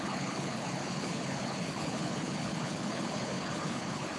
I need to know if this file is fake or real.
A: fake